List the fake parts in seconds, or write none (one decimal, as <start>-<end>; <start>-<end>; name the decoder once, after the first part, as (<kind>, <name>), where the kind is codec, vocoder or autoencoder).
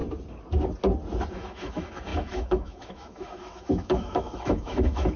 1.3-5.2 (autoencoder, DAC-VAE)